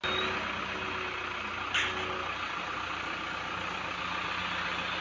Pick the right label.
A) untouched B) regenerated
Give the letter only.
A